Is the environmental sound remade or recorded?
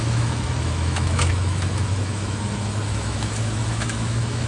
remade